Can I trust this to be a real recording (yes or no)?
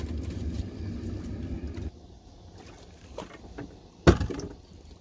yes